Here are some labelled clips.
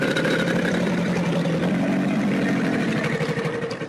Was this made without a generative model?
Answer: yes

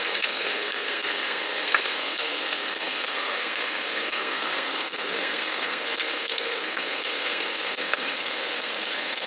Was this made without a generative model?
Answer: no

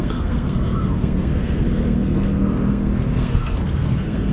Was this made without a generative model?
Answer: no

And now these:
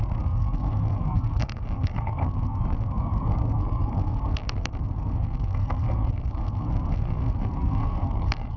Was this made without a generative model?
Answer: no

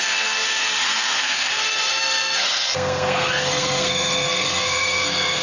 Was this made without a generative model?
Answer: no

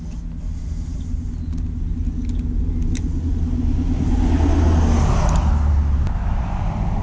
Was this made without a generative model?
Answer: yes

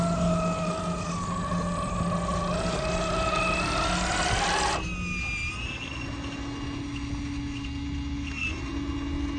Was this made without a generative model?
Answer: yes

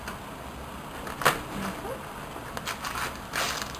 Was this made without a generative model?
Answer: yes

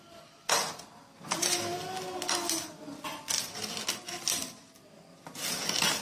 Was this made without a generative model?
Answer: yes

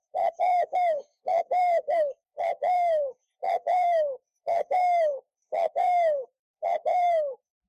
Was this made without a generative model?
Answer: no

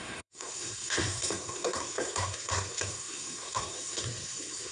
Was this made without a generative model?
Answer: no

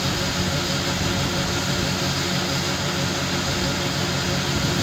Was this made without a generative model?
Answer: yes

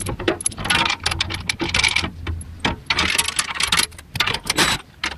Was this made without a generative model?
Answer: yes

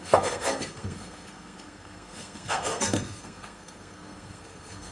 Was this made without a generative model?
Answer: no